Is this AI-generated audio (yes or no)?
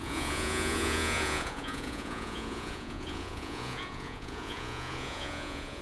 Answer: yes